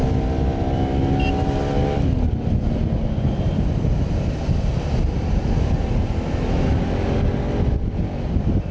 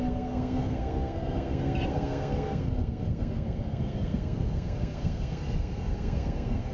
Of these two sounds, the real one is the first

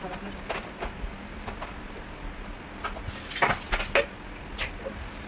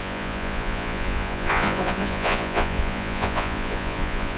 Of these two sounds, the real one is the first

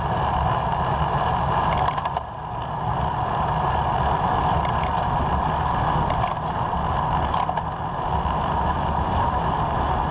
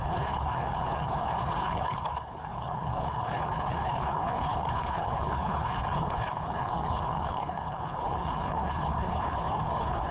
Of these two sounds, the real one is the first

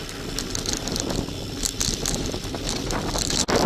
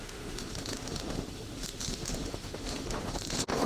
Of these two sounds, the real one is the first